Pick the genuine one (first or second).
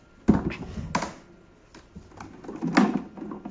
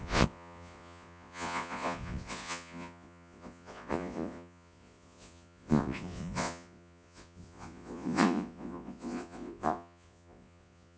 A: first